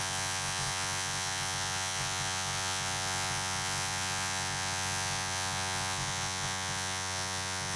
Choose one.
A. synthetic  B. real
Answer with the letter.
A